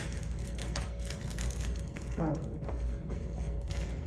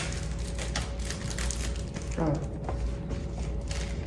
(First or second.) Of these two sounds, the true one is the second